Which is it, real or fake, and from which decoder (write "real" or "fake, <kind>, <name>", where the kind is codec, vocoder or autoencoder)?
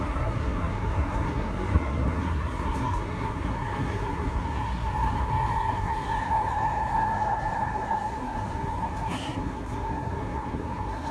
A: fake, codec, SNAC